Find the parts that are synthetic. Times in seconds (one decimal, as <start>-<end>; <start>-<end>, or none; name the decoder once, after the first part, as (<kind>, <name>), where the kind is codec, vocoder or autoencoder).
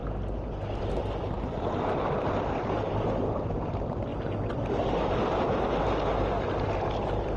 0.9-4.1 (vocoder, BigVGAN v2)